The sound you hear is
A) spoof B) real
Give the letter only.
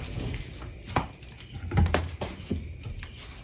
B